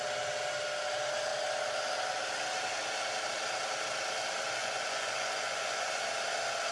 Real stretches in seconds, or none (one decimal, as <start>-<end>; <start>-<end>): 0.0-4.6; 6.0-6.7